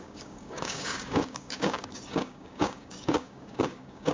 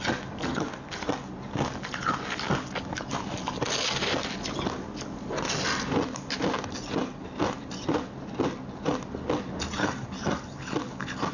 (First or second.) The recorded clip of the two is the second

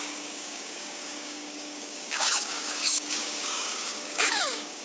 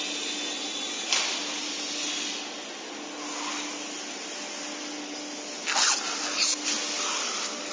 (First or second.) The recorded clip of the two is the second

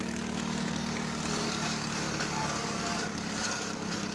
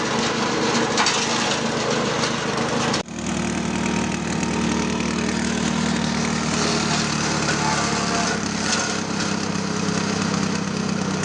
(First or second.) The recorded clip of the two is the second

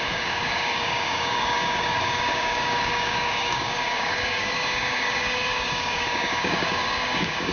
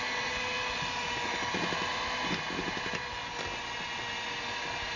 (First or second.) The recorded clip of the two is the second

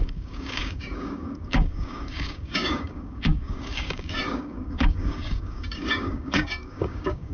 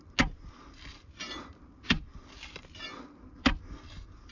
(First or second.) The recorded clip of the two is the second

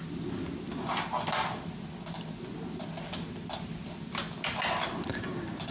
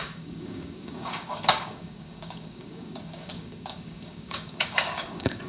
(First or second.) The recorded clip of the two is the first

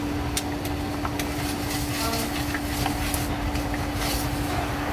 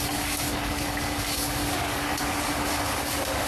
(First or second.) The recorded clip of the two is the first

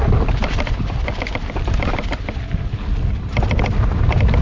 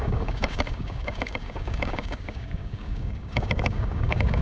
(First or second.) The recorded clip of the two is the first